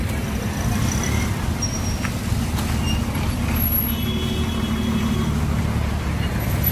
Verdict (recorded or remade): recorded